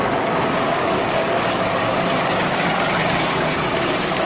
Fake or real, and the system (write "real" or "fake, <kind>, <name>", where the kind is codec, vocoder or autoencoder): fake, codec, DAC